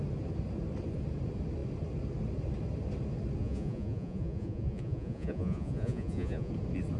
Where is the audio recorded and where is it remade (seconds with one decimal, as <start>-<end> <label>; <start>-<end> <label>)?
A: 0.0-3.4 recorded; 3.4-6.5 remade; 6.5-7.0 recorded